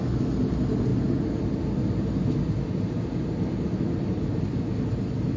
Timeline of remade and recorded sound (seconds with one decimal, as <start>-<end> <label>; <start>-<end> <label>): 0.0-5.4 recorded

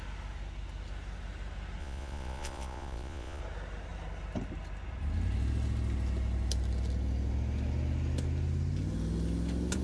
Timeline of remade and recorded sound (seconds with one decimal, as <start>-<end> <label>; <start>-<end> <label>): 0.0-1.8 recorded; 1.8-3.4 remade; 3.4-9.8 recorded

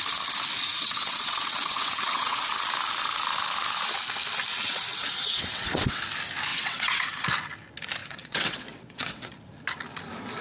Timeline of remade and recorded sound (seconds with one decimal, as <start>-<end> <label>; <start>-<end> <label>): 0.0-0.5 recorded; 0.5-2.5 remade; 2.5-4.5 recorded; 4.5-6.0 remade; 6.0-6.5 recorded; 6.5-7.1 remade; 7.1-8.0 recorded; 8.0-9.3 remade; 9.3-10.4 recorded

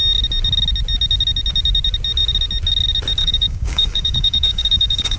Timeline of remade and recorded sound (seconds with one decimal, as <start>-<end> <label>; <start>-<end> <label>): 0.0-3.2 recorded; 3.2-5.2 remade

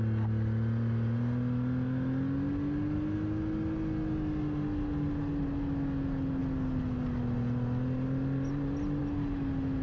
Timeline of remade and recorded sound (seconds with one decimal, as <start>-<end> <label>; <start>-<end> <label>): 0.0-9.8 recorded

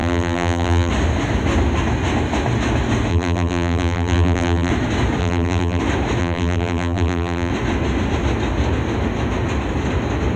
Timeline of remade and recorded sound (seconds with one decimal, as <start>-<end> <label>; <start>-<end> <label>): 0.0-0.9 remade; 0.9-3.1 recorded; 3.1-4.7 remade; 4.7-5.2 recorded; 5.2-5.8 remade; 5.8-6.2 recorded; 6.2-7.5 remade; 7.5-10.4 recorded